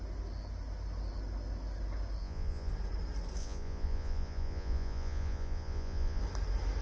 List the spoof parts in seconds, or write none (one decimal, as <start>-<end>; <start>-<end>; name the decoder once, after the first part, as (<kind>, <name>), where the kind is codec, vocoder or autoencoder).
2.2-2.7 (vocoder, Vocos); 3.4-6.2